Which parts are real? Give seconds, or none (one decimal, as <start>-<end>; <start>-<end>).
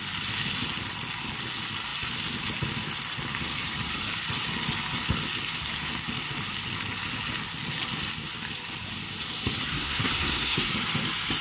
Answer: 0.0-9.7; 10.7-11.4